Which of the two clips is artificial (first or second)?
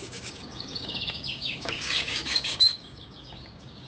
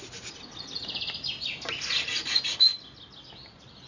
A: first